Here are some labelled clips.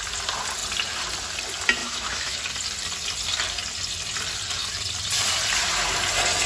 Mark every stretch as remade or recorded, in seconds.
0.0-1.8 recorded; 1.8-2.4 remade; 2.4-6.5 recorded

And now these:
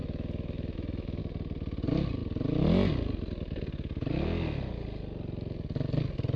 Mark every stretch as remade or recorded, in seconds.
0.0-1.2 remade; 1.2-6.4 recorded

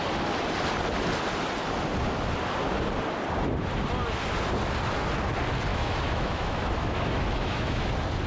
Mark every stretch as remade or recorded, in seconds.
0.0-5.7 recorded; 5.7-7.9 remade; 7.9-8.3 recorded

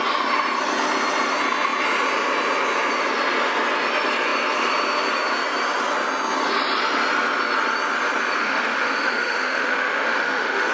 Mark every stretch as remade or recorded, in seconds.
0.0-8.4 recorded; 8.4-10.7 remade

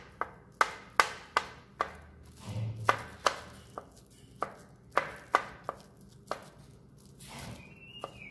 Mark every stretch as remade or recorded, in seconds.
0.0-8.3 recorded

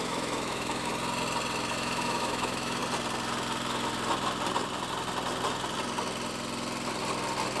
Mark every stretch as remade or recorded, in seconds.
0.0-0.9 remade; 0.9-1.7 recorded; 1.7-2.8 remade; 2.8-7.6 recorded

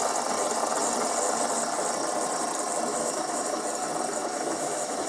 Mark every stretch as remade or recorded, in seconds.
0.0-2.9 recorded; 2.9-3.6 remade; 3.6-4.2 recorded; 4.2-5.1 remade